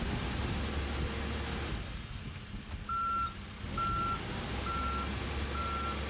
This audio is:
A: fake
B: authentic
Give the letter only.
B